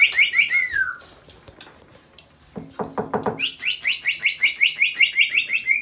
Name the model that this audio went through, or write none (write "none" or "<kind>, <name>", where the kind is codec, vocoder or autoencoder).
none